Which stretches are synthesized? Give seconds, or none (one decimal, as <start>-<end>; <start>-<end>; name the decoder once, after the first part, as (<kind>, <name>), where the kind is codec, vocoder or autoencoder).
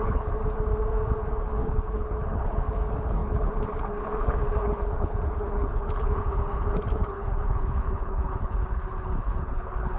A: 0.0-0.4 (codec, HILCodec); 1.4-10.0